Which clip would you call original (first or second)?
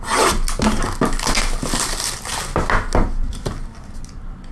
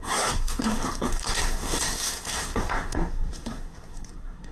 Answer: first